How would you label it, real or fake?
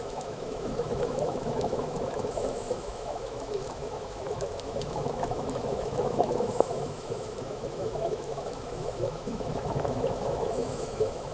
fake